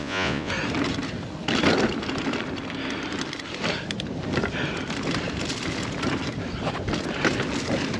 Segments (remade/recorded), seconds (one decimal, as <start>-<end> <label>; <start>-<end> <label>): 0.0-0.5 remade; 0.5-8.0 recorded